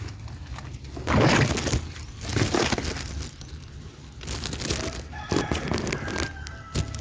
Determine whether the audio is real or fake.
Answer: real